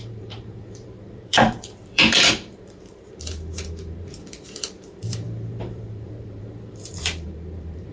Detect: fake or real fake